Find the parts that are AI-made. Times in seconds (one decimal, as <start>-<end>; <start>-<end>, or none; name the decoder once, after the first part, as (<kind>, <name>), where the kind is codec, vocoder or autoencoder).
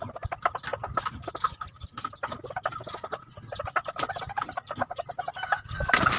none